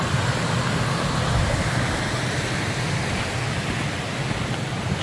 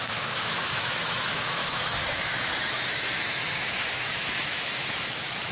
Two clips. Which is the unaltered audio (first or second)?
first